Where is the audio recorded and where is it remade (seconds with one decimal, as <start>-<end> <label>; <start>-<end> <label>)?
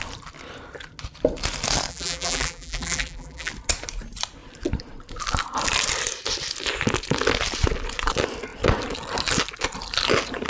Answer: 0.0-1.9 recorded; 1.9-3.5 remade; 3.5-10.5 recorded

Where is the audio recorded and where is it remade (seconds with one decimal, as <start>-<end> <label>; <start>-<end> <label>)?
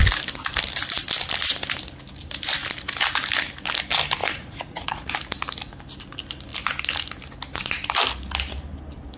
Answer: 0.0-4.2 recorded; 4.2-5.1 remade; 5.1-9.2 recorded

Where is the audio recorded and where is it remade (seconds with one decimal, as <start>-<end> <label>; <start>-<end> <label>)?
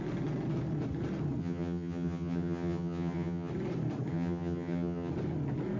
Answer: 0.0-1.4 recorded; 1.4-3.5 remade; 3.5-4.1 recorded; 4.1-5.1 remade; 5.1-5.8 recorded